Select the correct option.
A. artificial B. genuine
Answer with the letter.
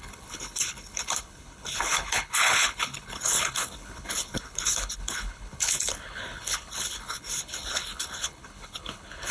A